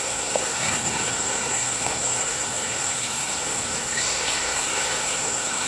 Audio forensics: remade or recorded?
remade